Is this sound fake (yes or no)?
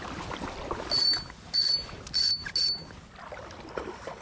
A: no